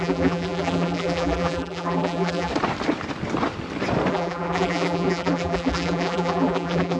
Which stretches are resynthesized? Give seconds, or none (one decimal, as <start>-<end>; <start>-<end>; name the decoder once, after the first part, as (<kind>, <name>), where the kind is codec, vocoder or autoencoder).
0.0-2.5 (vocoder, BigVGAN v2); 4.1-7.0